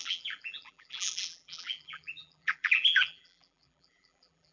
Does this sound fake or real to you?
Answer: fake